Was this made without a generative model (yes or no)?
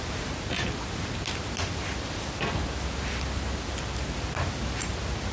yes